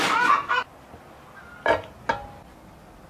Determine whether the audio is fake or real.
real